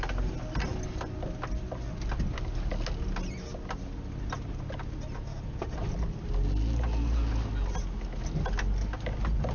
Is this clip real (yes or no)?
yes